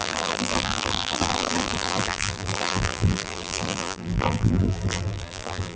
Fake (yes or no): yes